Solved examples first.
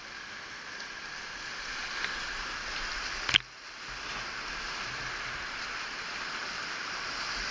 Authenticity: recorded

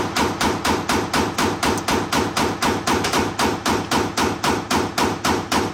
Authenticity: recorded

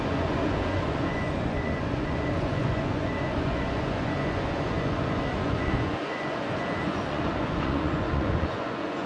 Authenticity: remade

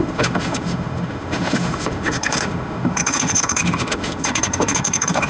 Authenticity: remade